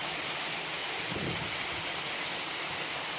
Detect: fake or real real